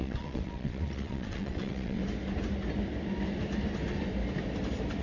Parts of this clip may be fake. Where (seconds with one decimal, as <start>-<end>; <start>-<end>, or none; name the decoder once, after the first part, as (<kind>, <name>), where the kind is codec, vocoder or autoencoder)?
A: 0.0-2.0 (vocoder, WaveNeXt)